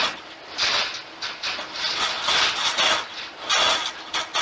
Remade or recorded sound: recorded